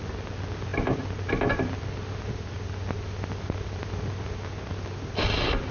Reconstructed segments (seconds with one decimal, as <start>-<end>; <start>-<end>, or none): none